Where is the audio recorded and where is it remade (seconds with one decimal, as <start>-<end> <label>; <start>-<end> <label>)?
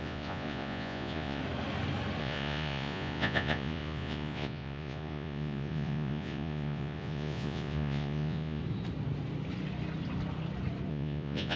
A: 0.0-1.4 remade; 1.4-2.2 recorded; 2.2-8.6 remade; 8.6-10.9 recorded; 10.9-11.6 remade